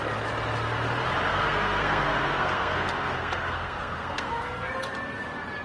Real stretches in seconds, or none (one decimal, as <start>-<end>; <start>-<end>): 0.0-1.3; 4.7-5.6

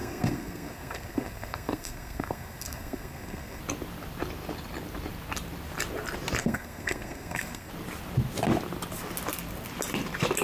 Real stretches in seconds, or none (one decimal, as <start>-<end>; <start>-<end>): 3.6-6.4; 7.7-10.4

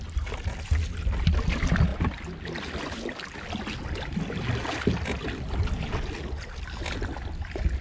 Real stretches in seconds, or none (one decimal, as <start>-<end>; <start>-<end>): 0.0-7.8